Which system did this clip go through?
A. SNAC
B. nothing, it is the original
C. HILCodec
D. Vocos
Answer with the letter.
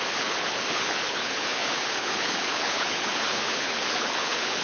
C